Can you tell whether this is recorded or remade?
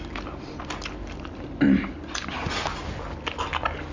recorded